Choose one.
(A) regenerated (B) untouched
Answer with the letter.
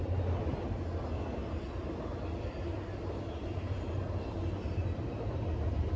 B